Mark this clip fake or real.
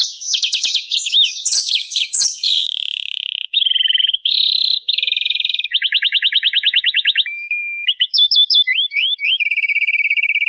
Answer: fake